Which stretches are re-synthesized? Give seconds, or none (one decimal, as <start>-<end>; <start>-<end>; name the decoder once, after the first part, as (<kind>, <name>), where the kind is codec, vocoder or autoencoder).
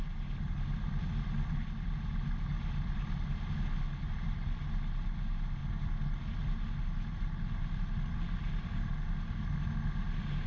none